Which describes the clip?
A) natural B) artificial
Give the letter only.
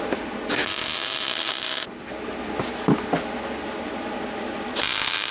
A